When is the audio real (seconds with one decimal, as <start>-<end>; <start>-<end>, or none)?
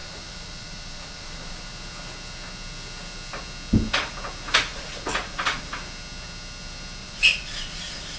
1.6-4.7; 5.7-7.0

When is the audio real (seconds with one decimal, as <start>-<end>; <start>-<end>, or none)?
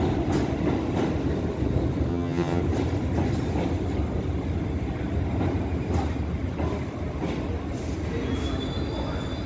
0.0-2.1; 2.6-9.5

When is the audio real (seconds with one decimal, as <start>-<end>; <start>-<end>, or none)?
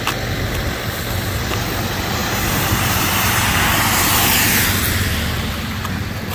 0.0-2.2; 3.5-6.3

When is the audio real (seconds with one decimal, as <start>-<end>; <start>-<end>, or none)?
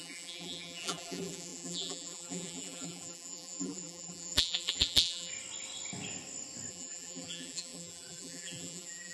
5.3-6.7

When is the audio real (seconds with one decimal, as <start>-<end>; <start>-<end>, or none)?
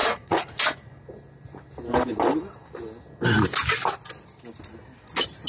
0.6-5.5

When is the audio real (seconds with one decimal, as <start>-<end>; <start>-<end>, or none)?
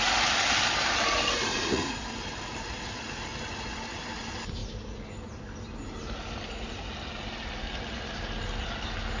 0.0-1.5; 2.0-9.2